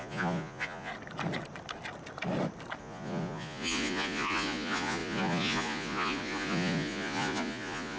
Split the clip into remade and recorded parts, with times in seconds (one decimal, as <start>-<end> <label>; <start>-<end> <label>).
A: 0.0-0.9 remade; 0.9-2.8 recorded; 2.8-8.0 remade